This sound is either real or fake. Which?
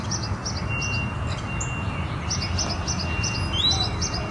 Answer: real